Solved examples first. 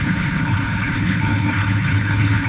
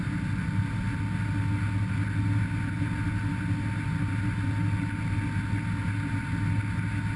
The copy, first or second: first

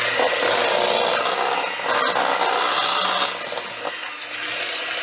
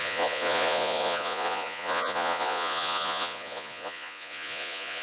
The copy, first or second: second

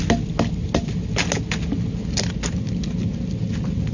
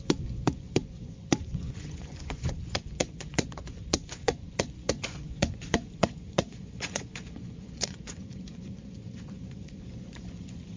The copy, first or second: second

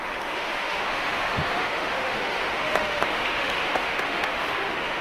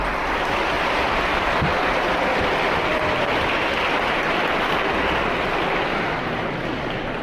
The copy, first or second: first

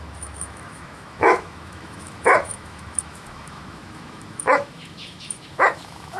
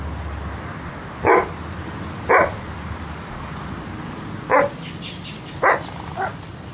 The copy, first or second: first